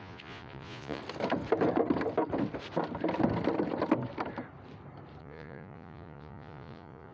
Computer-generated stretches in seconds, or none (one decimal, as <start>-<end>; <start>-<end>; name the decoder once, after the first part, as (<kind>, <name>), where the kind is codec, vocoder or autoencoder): 0.0-1.0 (vocoder, Vocos); 5.2-7.1